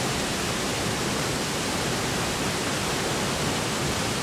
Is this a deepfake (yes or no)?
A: no